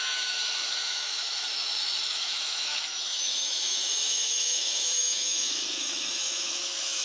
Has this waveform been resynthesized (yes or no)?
yes